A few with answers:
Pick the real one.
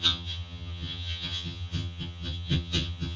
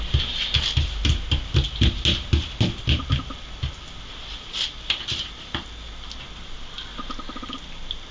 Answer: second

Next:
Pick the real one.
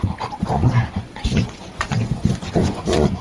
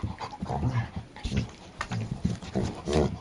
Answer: second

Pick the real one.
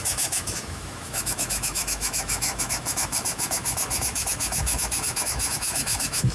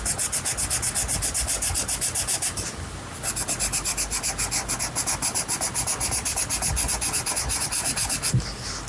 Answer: second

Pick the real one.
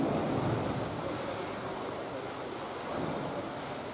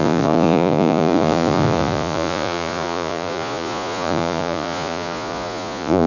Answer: first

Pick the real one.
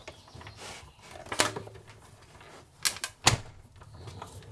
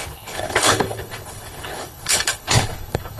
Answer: first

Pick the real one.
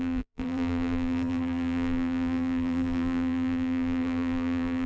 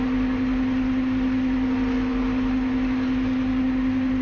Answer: second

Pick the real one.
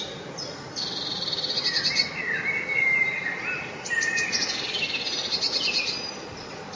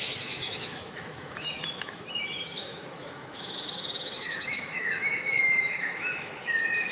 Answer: first